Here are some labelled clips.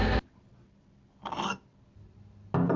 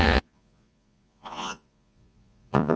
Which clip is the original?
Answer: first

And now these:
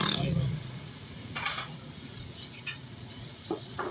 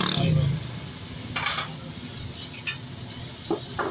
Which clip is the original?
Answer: second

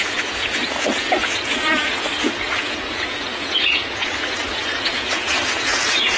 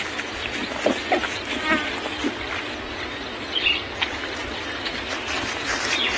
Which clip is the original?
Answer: second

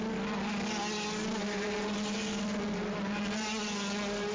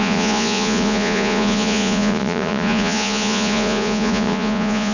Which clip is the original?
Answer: first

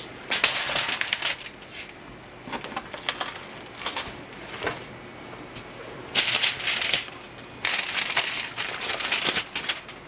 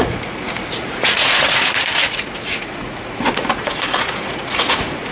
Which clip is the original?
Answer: first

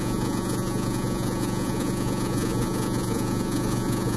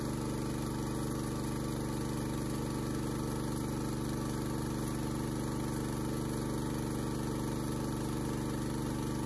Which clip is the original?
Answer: second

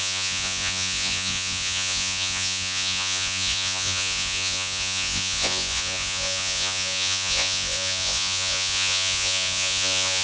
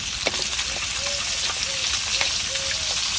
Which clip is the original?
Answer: second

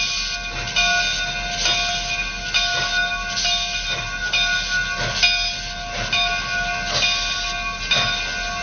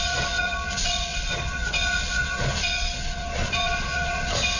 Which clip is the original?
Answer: first